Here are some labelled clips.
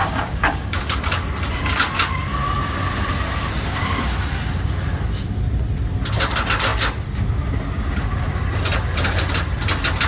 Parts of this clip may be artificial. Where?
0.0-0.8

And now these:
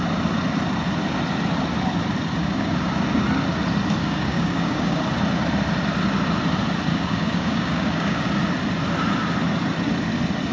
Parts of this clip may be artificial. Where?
2.4-2.9; 4.0-5.0; 6.9-8.3

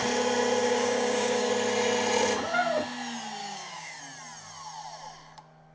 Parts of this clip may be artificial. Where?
0.6-1.5; 3.4-4.0

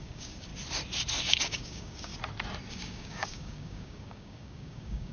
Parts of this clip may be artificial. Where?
0.0-0.5; 1.2-2.1; 2.7-5.1

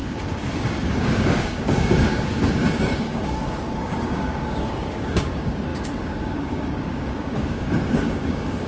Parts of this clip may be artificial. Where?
0.0-8.7

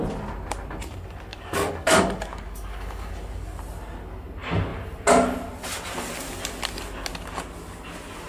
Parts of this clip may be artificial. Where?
1.3-3.6

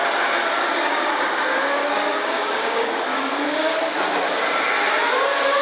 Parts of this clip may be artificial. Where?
0.6-3.7

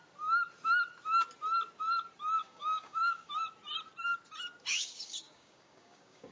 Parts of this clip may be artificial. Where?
2.4-3.3; 4.7-6.3